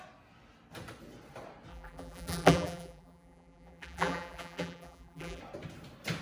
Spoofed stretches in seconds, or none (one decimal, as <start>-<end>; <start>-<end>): 1.7-5.4